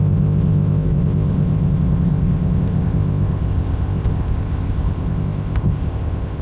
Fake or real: fake